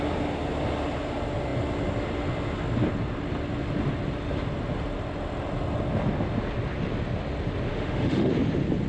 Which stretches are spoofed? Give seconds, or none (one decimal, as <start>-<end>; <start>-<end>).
7.7-8.3